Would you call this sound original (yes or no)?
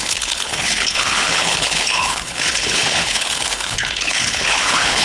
no